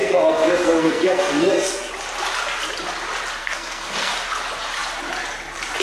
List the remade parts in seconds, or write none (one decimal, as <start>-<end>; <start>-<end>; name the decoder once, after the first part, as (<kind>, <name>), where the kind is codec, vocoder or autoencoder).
0.0-1.9 (codec, SNAC); 3.4-4.1